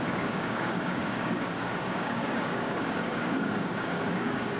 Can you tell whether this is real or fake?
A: fake